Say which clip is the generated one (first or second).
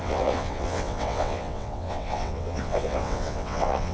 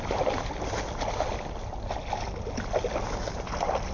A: first